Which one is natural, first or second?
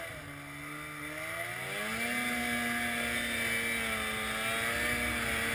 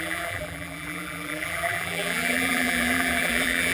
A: first